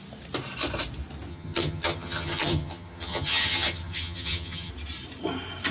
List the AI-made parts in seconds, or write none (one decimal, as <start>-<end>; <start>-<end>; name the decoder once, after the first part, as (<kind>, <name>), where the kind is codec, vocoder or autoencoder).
1.3-4.7 (vocoder, HiFi-GAN)